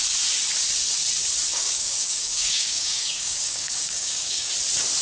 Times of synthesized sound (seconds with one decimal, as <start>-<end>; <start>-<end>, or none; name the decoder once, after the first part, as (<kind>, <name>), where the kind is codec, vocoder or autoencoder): 1.5-4.5 (codec, DAC)